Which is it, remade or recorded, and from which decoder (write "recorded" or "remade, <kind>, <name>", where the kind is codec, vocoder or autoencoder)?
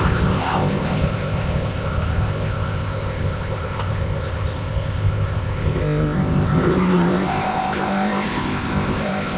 remade, codec, ZipCodec